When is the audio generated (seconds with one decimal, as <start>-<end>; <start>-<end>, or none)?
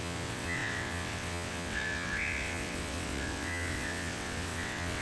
0.0-5.0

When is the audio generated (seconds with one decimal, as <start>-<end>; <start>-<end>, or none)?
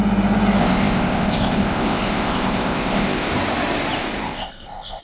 0.6-3.3; 4.0-5.0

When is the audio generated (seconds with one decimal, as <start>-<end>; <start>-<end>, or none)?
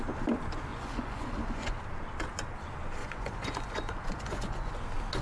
0.7-1.8; 3.0-4.7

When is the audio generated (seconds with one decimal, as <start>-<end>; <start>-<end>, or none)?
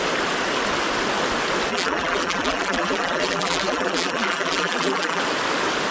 1.7-5.2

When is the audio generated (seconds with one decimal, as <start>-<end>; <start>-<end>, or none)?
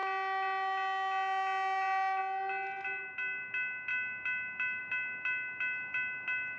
none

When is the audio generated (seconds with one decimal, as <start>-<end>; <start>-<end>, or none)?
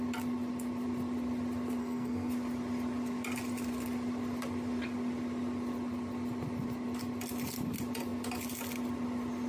1.8-2.3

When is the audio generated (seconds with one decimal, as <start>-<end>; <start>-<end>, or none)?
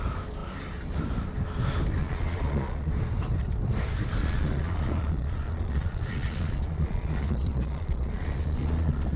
2.0-2.9; 4.2-9.2